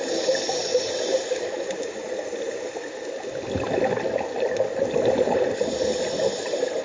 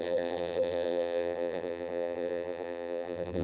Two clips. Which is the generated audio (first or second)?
second